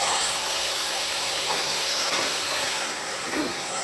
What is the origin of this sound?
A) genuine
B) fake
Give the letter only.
B